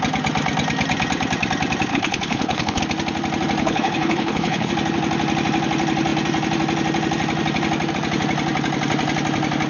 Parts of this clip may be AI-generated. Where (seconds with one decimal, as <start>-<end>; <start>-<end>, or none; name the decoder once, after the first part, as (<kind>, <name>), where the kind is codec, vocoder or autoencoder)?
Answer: 1.9-2.8 (codec, HILCodec); 3.6-4.7